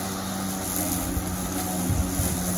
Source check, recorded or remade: recorded